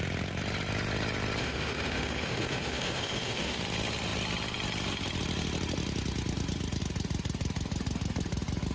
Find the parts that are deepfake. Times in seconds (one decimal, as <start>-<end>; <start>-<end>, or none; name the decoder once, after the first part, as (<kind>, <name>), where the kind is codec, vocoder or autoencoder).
1.4-3.6 (autoencoder, DAC-VAE)